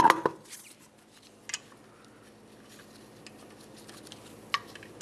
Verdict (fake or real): real